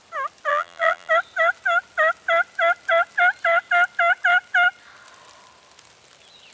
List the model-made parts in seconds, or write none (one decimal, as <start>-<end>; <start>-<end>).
0.5-1.1